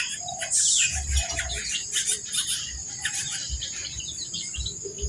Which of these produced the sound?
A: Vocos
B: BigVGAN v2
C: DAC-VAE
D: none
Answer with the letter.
B